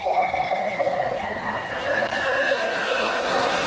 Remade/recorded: remade